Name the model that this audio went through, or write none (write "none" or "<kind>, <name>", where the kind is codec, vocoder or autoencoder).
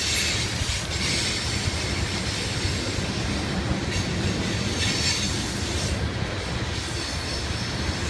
none